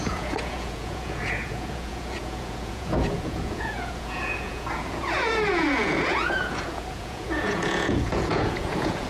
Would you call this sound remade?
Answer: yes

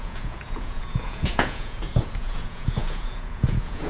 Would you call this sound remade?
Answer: yes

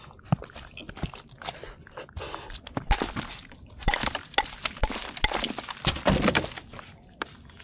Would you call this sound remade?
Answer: no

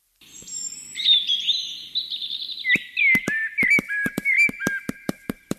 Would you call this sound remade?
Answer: no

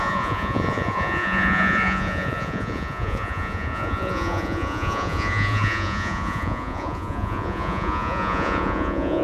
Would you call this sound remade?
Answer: yes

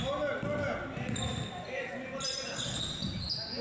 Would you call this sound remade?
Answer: no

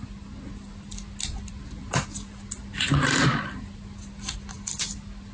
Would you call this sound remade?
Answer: no